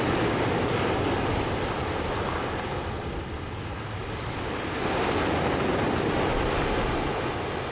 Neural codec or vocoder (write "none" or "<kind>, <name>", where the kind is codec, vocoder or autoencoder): none